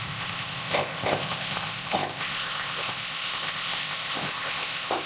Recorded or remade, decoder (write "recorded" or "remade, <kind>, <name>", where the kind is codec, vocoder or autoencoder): remade, codec, ZipCodec